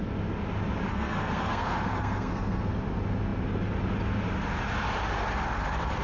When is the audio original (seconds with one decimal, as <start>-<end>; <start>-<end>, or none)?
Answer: 0.0-0.9; 2.7-6.0